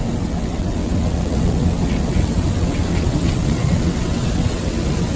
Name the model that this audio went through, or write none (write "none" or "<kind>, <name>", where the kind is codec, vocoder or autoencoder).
vocoder, WaveNeXt